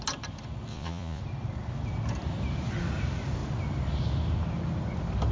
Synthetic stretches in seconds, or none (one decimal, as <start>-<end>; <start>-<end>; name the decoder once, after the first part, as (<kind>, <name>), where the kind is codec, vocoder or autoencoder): 0.7-1.2 (vocoder, Vocos)